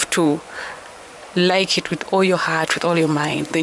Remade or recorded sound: remade